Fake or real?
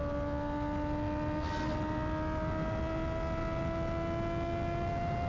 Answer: real